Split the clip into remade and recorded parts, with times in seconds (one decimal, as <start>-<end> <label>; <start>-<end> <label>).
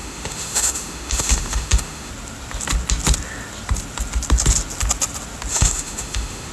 0.0-2.1 remade; 2.1-5.5 recorded; 5.5-6.5 remade